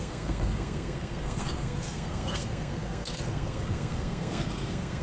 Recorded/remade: remade